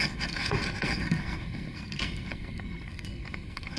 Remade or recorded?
remade